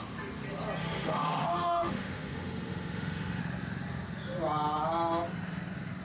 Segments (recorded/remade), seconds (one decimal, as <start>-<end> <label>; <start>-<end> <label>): 0.0-0.8 recorded; 0.8-3.4 remade; 3.4-6.0 recorded